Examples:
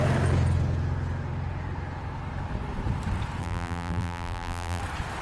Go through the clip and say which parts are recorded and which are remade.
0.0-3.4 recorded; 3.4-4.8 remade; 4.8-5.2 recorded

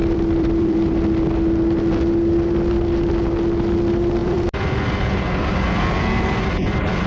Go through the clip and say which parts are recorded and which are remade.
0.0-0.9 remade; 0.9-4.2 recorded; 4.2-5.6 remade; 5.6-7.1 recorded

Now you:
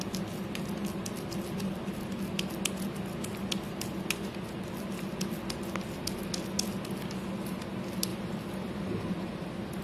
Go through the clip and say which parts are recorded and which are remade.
0.0-8.1 recorded; 8.1-9.8 remade